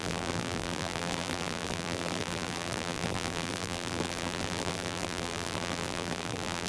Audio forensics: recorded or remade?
remade